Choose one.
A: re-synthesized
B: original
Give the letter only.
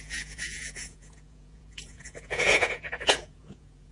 A